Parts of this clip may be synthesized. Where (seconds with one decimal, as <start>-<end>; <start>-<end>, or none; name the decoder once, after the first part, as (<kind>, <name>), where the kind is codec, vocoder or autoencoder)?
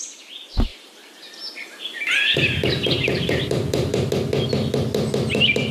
0.7-4.1 (vocoder, BigVGAN v2)